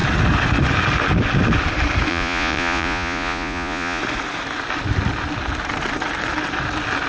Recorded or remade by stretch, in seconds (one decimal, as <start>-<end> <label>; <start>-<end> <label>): 0.0-2.1 recorded; 2.1-4.0 remade; 4.0-7.1 recorded

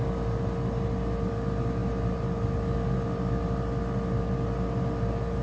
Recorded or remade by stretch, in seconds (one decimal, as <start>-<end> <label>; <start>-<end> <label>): 0.0-5.4 recorded

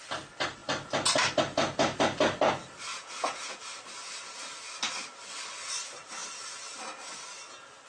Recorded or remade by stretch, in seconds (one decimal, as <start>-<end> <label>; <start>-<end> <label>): 0.0-2.9 recorded; 2.9-3.6 remade; 3.6-7.9 recorded